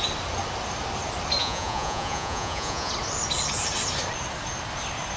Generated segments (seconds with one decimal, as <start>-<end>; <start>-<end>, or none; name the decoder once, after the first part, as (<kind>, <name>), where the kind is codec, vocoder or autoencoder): 1.4-2.9 (vocoder, Vocos)